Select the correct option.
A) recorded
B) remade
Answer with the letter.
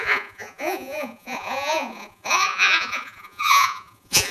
B